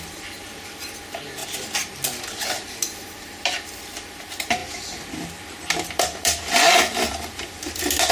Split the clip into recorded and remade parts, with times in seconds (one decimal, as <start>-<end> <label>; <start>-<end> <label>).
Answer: 0.0-8.1 remade